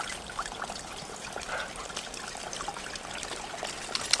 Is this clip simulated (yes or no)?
no